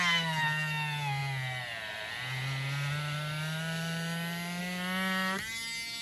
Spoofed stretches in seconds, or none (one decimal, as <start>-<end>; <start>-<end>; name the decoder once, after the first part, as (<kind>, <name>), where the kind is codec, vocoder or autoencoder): none